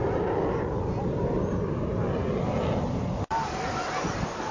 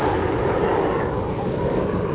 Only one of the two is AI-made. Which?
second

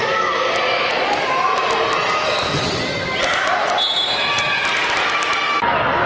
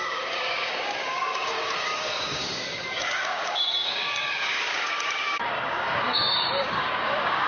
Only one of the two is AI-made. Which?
second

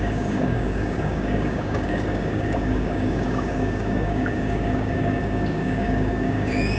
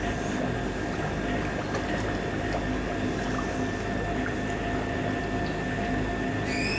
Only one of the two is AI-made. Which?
first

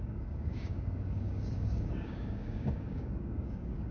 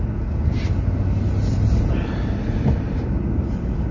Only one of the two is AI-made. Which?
first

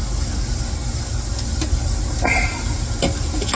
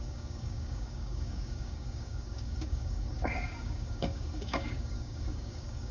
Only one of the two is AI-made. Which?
second